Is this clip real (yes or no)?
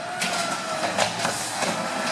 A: yes